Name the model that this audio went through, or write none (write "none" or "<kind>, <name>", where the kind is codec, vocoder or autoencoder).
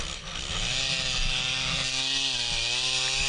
none